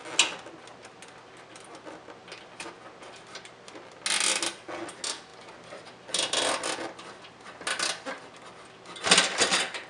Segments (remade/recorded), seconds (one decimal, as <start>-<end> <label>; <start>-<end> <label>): 0.0-9.9 recorded